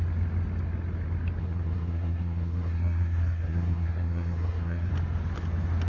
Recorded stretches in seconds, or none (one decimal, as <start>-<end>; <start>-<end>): 0.0-1.4; 4.9-5.9